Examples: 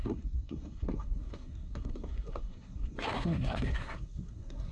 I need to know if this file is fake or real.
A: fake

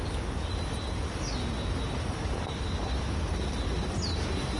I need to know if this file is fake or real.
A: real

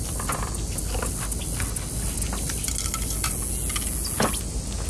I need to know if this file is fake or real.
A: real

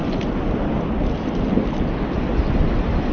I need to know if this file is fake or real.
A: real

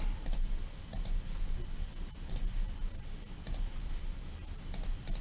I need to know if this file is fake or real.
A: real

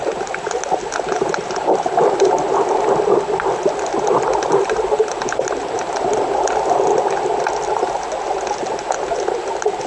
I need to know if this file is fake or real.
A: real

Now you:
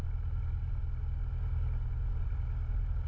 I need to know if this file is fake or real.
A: real